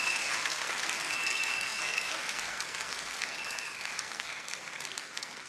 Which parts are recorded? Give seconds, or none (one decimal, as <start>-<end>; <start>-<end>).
none